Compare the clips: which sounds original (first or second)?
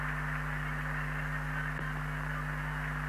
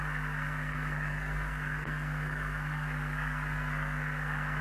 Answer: first